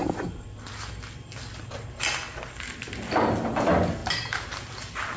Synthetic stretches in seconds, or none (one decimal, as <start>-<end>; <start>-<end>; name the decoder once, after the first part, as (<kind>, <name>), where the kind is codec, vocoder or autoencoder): 4.0-4.7 (vocoder, BigVGAN v2)

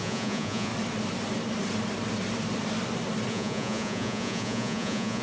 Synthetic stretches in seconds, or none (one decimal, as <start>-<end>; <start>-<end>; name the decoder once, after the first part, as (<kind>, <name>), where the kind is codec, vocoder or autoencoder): 0.0-0.7 (vocoder, Vocos); 3.3-5.2

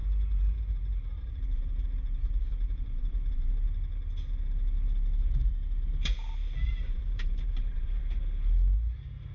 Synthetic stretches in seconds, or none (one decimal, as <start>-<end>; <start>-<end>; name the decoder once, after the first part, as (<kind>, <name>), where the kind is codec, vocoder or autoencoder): 0.0-3.5 (vocoder, BigVGAN v2); 6.7-8.0

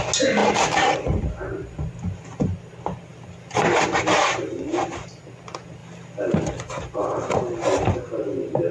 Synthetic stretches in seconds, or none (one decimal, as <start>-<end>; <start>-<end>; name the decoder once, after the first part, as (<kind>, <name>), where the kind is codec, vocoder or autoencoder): 3.1-5.2 (vocoder, BigVGAN v2); 5.8-8.0

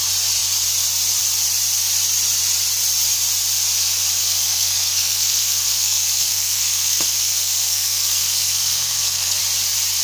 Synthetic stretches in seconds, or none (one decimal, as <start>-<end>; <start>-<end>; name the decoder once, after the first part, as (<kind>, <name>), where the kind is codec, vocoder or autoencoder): 4.2-9.4 (codec, SNAC)

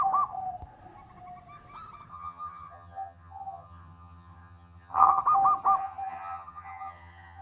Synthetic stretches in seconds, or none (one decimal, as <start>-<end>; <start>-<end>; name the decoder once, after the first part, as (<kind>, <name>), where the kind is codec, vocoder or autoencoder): 2.1-5.2 (vocoder, HiFi-GAN); 5.8-7.4

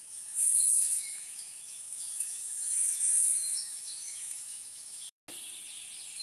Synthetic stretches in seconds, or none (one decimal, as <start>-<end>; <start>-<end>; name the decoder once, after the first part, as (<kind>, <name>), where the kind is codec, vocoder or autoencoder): 0.0-5.2 (autoencoder, DAC-VAE)

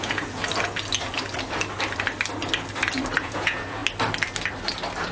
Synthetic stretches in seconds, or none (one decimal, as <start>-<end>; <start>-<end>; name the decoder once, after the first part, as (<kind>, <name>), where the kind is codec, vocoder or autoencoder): 0.0-0.4 (vocoder, Vocos); 3.2-3.8